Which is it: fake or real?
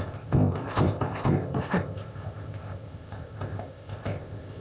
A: fake